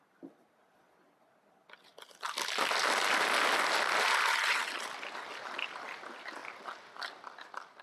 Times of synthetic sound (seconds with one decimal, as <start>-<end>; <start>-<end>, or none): none